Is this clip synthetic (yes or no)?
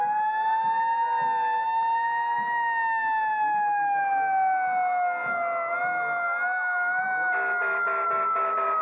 no